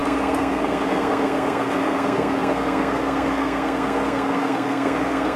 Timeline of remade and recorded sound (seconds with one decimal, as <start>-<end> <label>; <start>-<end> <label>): 0.0-5.4 remade